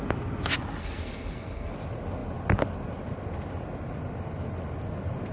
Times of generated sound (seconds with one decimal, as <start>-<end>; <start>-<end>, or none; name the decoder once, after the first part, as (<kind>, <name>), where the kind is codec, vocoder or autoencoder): 0.8-1.7 (codec, SNAC)